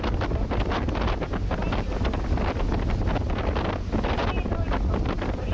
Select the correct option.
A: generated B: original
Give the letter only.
B